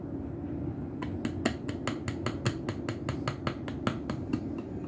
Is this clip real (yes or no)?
yes